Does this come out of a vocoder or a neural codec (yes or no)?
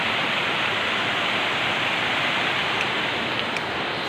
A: no